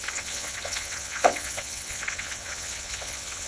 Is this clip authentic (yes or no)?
no